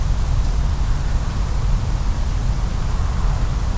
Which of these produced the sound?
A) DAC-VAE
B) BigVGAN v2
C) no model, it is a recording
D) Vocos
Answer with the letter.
C